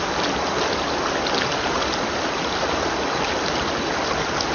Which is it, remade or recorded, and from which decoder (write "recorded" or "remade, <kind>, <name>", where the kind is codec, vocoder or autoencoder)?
recorded